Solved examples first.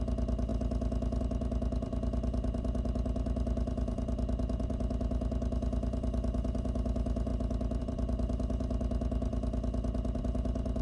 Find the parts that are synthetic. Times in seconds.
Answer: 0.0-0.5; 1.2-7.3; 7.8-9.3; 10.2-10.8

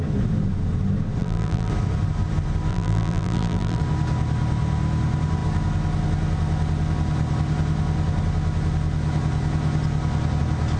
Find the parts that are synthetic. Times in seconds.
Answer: 1.2-1.7; 2.7-3.8